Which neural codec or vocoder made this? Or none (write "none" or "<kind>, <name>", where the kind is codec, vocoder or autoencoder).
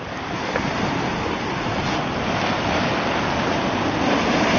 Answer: none